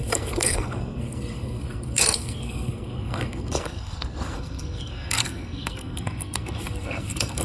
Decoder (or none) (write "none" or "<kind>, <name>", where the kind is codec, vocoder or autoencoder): codec, SNAC